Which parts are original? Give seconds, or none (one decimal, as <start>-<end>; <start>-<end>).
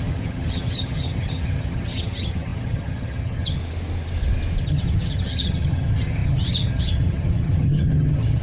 3.6-4.6